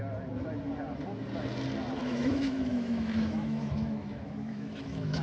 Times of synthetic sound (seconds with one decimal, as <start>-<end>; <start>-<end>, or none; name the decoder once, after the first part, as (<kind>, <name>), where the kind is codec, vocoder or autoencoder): 2.0-5.2 (autoencoder, DAC-VAE)